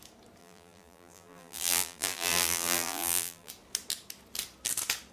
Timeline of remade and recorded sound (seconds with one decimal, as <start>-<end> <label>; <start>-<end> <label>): 0.0-0.4 recorded; 0.4-3.5 remade; 3.5-5.1 recorded